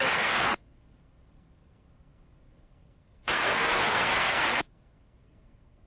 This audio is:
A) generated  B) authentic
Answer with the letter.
A